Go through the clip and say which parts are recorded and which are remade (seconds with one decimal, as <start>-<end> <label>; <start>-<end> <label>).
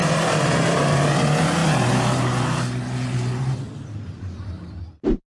0.0-1.1 remade; 1.1-5.3 recorded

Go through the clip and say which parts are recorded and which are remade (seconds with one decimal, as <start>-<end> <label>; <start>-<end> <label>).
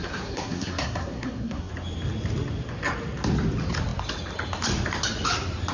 0.0-1.7 remade; 1.7-5.7 recorded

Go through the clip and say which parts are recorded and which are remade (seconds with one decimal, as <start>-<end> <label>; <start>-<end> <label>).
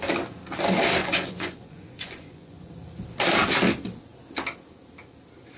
0.0-1.0 recorded; 1.0-2.7 remade; 2.7-5.6 recorded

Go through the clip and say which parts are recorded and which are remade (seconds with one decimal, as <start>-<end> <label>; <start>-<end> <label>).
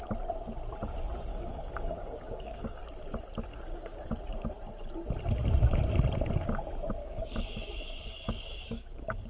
0.0-1.3 recorded; 1.3-2.8 remade; 2.8-3.5 recorded; 3.5-4.1 remade; 4.1-7.0 recorded; 7.0-9.3 remade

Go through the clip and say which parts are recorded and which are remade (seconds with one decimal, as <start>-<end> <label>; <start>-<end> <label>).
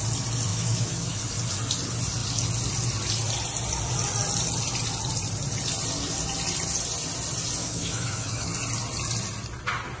0.0-0.5 recorded; 0.5-1.2 remade; 1.2-7.6 recorded; 7.6-8.5 remade; 8.5-10.0 recorded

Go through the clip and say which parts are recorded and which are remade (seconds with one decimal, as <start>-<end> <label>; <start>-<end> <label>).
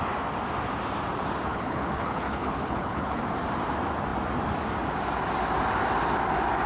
0.0-1.5 recorded; 1.5-3.2 remade; 3.2-6.7 recorded